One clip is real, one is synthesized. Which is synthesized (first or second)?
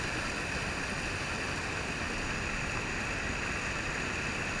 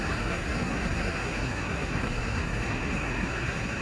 second